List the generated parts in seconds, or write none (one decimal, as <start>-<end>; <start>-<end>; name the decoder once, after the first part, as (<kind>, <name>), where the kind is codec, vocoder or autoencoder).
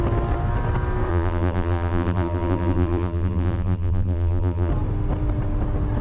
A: 1.1-4.7 (vocoder, BigVGAN v2)